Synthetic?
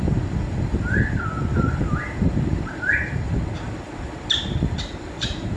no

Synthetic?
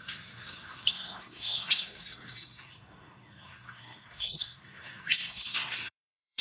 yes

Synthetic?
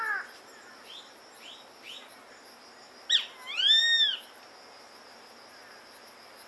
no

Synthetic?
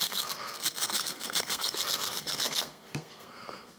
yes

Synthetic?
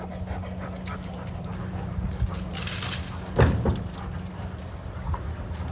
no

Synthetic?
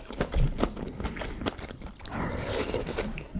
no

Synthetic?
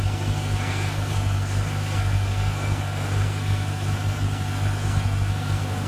yes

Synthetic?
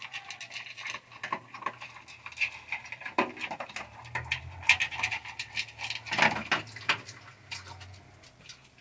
no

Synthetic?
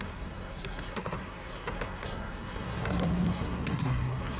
yes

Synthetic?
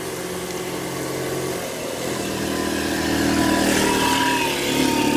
no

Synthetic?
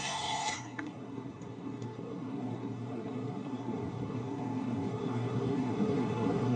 yes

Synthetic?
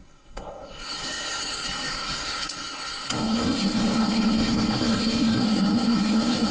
yes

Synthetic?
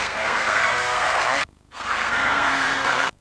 yes